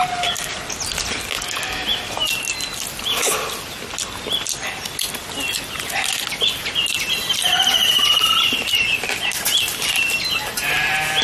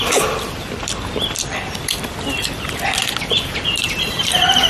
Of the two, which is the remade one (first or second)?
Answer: second